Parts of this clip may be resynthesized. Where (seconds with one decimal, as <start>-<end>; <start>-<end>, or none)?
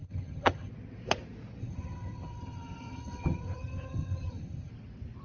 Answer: 0.0-0.7; 1.6-4.7